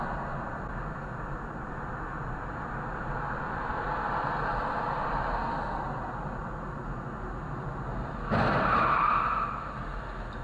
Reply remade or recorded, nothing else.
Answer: recorded